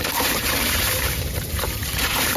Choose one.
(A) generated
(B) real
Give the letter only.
A